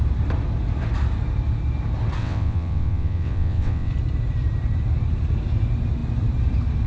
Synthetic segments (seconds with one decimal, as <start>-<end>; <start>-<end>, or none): 2.2-3.9